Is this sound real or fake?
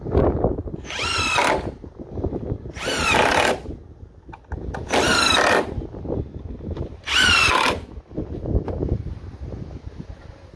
real